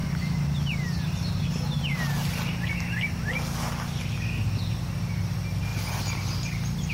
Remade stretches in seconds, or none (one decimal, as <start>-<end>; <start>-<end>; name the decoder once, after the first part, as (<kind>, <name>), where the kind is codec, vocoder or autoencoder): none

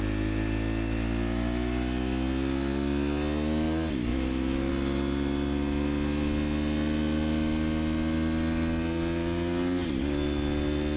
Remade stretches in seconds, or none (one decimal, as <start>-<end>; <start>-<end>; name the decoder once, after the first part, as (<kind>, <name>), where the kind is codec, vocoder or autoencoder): 4.1-4.7 (autoencoder, DAC-VAE)

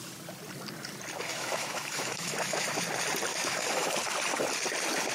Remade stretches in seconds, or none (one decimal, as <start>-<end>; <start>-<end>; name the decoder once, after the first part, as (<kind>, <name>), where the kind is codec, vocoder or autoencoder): 1.3-2.8 (autoencoder, DAC-VAE); 3.3-3.9

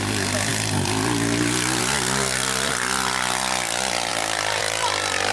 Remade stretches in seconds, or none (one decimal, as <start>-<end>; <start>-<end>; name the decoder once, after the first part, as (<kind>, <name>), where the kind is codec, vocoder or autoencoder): none

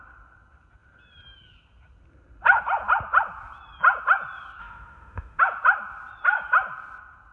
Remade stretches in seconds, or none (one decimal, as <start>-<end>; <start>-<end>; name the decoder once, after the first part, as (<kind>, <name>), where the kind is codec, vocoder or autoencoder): 4.6-5.4 (autoencoder, DAC-VAE)

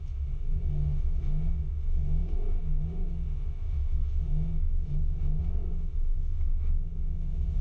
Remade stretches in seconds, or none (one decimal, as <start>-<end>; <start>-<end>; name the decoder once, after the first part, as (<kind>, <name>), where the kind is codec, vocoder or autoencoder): 0.0-7.6 (autoencoder, DAC-VAE)